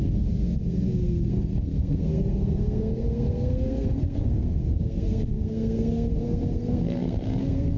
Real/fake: fake